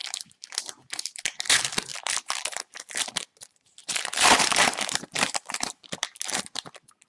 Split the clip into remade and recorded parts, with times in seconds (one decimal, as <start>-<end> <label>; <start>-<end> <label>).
0.0-1.9 recorded; 1.9-2.7 remade; 2.7-3.8 recorded; 3.8-7.1 remade